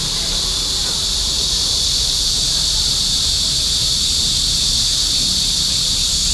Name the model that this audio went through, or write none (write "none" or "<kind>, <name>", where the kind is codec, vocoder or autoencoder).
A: vocoder, BigVGAN v2